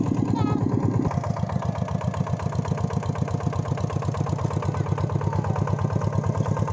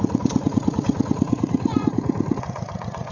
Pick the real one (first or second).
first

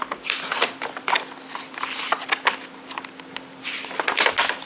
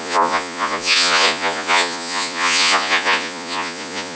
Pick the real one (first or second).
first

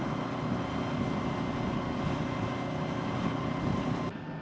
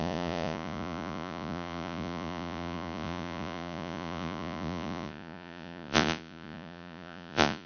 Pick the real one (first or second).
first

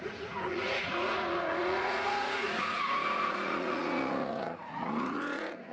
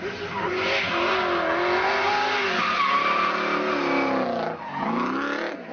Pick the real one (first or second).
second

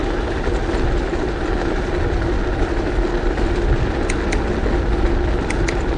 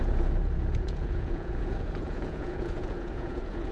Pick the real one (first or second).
first